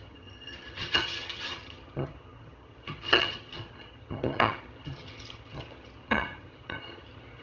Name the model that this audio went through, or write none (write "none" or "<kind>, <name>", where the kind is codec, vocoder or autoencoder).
vocoder, HiFi-GAN